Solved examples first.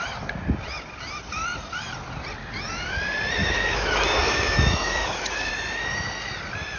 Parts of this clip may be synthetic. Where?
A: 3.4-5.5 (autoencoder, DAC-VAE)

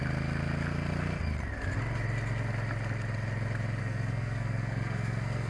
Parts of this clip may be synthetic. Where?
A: 3.8-5.5 (codec, SNAC)

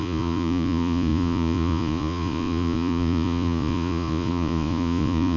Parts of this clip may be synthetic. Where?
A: 0.0-5.4 (vocoder, Vocos)

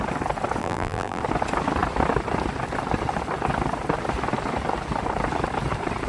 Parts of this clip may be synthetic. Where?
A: 0.6-1.2 (vocoder, BigVGAN v2)

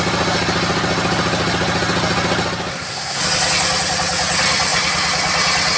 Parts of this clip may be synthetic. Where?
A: 2.7-3.2 (codec, SNAC)

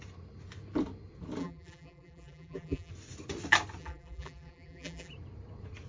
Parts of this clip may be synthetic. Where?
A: 1.4-2.9 (vocoder, BigVGAN v2); 3.8-5.1

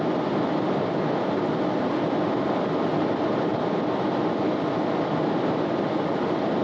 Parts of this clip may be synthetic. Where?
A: none